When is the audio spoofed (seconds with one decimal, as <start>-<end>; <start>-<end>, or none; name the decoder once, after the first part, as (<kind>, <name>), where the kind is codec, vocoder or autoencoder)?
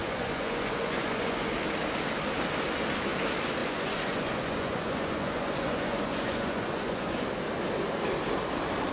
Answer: 0.0-1.5 (vocoder, Vocos); 3.6-7.2